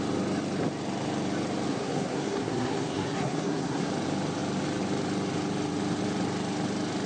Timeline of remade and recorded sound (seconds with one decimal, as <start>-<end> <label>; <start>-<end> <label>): 0.0-1.7 recorded; 1.7-3.9 remade; 3.9-7.1 recorded